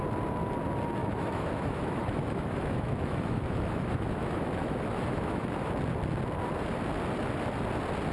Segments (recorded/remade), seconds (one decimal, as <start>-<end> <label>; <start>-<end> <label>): 0.0-1.0 recorded; 1.0-5.7 remade; 5.7-8.1 recorded